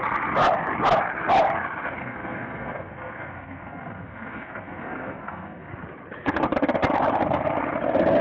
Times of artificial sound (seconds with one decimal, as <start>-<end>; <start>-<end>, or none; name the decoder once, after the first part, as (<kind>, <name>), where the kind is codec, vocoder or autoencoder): 2.0-5.7 (codec, SNAC)